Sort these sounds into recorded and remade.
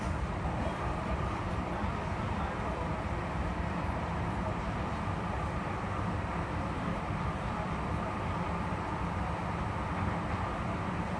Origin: remade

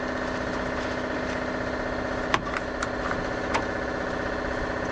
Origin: recorded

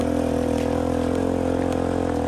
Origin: recorded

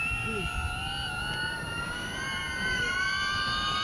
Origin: recorded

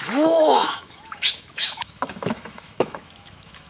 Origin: remade